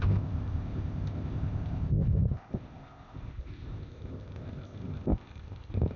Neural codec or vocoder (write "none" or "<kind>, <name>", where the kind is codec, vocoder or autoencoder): codec, ZipCodec